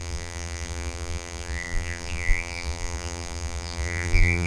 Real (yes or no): no